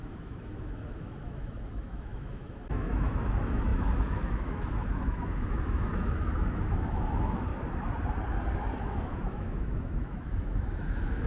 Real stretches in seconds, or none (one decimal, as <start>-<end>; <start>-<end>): 7.5-8.8